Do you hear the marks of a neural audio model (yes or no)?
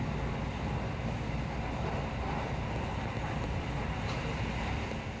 no